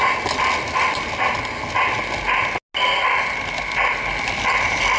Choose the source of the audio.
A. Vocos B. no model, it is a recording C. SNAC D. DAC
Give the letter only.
B